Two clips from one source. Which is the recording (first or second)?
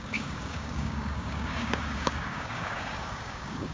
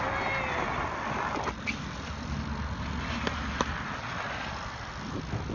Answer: second